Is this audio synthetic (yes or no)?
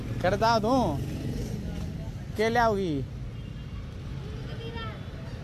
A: no